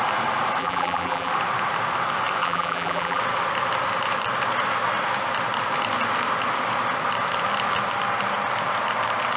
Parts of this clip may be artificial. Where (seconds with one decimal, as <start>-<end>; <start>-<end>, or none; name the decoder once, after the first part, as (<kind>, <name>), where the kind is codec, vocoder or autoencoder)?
0.6-1.3 (vocoder, BigVGAN v2); 2.4-3.2